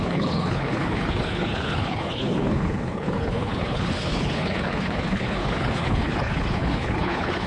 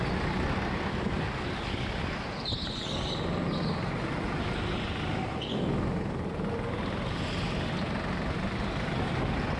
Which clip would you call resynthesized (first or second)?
first